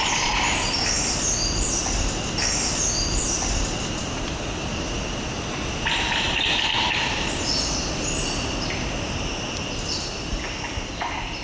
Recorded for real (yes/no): yes